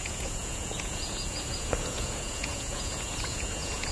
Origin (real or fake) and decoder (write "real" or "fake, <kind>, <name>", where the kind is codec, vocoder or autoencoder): fake, vocoder, Vocos